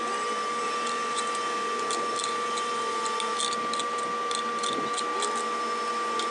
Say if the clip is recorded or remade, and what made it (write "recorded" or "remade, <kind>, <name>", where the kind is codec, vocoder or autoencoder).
recorded